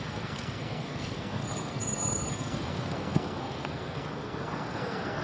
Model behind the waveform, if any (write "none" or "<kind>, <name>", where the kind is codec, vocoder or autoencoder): codec, SNAC